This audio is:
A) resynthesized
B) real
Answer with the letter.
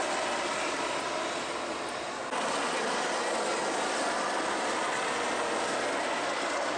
B